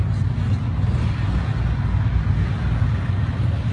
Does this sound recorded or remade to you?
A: recorded